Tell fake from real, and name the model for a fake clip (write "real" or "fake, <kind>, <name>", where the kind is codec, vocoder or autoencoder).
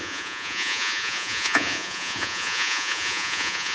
fake, vocoder, Vocos